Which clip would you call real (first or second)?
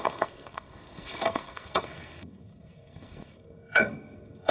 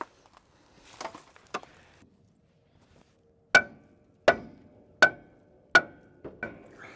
second